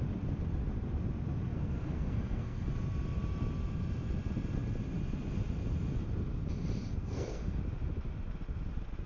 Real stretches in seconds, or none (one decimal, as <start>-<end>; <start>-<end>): 0.0-1.5; 2.7-6.9; 7.6-9.1

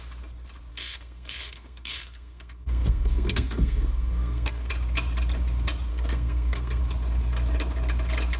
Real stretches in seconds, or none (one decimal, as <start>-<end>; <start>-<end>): 0.0-0.7; 4.7-5.9; 6.8-8.4

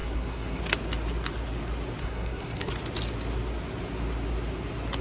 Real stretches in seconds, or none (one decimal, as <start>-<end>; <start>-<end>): 0.6-2.0; 2.7-5.0

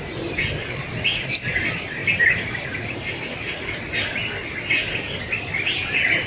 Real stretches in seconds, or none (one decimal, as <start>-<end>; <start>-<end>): 0.0-6.3

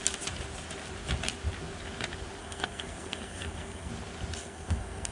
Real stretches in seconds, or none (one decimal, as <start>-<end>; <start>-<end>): 0.0-2.4; 3.9-4.4

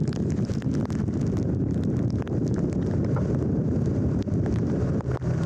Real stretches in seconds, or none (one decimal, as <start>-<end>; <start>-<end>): 0.0-5.5

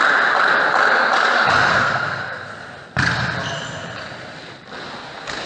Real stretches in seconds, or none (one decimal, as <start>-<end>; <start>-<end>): 0.0-1.7; 2.5-5.5